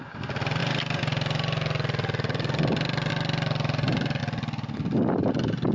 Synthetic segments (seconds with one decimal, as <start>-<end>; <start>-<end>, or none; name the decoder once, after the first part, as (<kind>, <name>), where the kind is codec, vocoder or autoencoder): none